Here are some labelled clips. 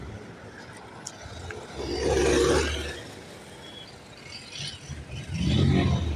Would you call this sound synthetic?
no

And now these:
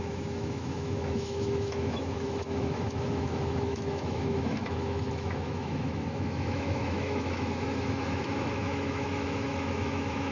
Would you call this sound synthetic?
yes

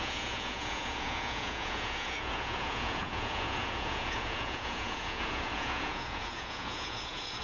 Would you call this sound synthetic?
yes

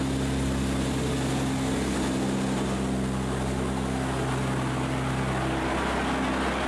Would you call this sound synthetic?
no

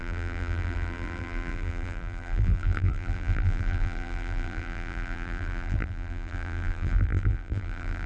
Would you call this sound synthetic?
yes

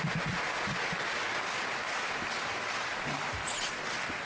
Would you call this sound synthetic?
no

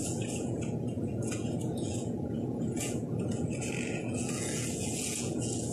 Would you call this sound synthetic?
yes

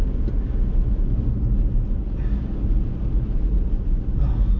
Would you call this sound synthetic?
no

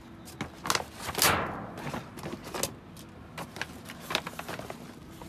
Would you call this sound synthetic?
no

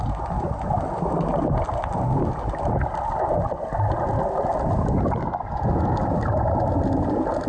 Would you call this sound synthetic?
no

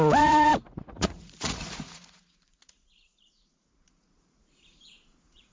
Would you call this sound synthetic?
yes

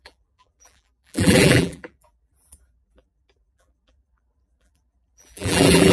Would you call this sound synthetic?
yes